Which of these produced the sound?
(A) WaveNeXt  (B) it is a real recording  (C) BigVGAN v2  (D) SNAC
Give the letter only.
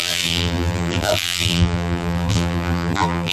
C